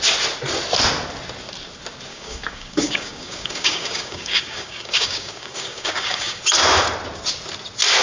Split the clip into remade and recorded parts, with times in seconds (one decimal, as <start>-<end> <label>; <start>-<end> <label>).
0.0-2.1 recorded; 2.1-6.4 remade; 6.4-8.0 recorded